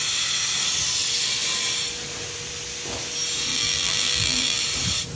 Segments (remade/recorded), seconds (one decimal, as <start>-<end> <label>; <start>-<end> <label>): 0.0-3.5 recorded; 3.5-4.6 remade; 4.6-5.2 recorded